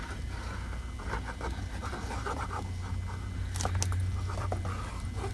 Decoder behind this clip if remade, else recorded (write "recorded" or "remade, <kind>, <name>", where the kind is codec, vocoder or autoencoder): recorded